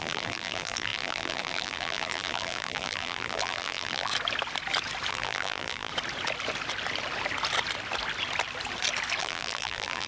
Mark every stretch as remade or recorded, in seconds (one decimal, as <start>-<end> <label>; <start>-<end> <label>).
0.0-4.1 remade; 4.1-5.1 recorded; 5.1-5.9 remade; 5.9-9.2 recorded; 9.2-10.1 remade